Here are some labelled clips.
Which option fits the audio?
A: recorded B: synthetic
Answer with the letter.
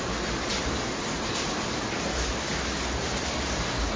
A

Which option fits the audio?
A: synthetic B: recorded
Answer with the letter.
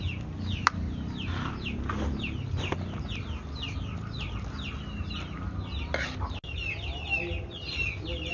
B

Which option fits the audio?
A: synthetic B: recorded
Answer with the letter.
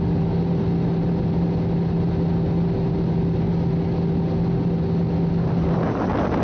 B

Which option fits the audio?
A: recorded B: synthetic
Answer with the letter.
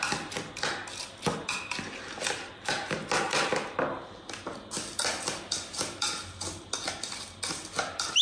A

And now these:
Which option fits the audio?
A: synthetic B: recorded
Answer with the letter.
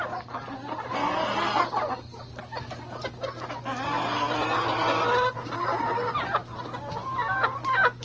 B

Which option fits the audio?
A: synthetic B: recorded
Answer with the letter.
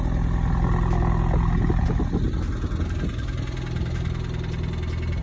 B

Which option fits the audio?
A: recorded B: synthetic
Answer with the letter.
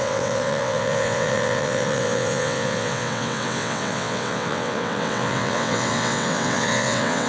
B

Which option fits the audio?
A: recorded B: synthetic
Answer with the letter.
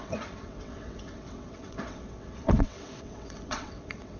B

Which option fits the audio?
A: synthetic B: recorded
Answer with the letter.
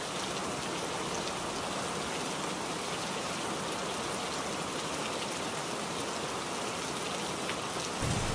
B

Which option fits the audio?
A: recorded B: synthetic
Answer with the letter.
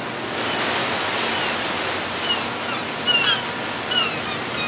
A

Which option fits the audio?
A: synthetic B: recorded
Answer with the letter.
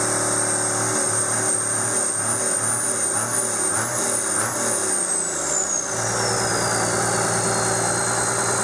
B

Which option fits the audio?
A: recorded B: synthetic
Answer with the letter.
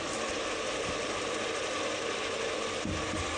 A